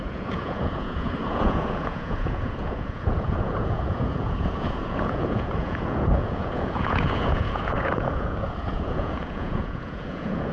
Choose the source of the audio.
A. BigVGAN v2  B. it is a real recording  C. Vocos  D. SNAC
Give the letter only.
C